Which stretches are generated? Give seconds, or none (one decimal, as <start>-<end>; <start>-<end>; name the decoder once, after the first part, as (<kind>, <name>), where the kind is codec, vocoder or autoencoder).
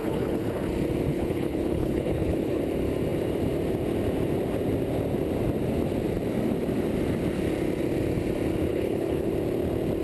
0.0-0.5 (codec, HILCodec); 1.1-2.6; 8.7-9.3